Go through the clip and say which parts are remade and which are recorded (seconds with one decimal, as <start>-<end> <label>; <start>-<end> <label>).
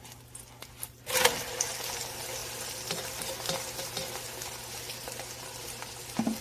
0.0-2.4 recorded; 2.4-6.4 remade